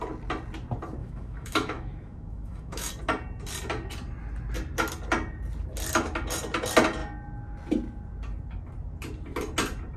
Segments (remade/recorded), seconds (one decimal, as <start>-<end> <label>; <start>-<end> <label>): 0.0-1.0 recorded; 1.0-2.9 remade; 2.9-10.0 recorded